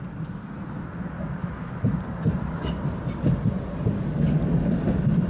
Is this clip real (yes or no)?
yes